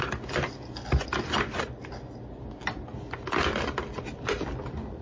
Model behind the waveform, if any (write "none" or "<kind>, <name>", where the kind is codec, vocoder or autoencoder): none